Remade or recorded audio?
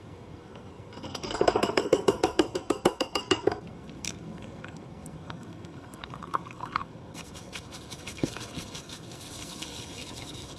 remade